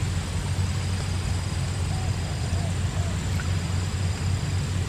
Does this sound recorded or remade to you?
remade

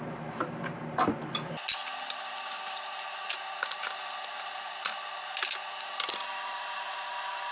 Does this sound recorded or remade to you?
recorded